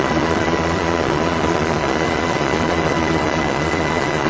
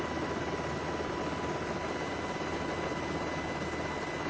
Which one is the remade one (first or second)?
first